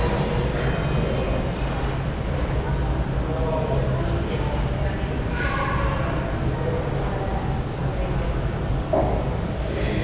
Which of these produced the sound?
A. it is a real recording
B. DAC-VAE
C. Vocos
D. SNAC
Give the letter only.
A